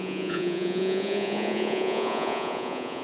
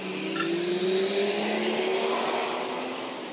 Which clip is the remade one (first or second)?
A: first